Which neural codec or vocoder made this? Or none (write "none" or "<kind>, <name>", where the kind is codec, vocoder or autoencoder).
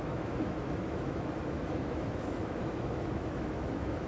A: autoencoder, DAC-VAE